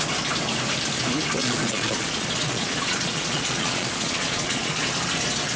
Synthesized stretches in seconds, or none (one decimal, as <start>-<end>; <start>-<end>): 1.4-4.8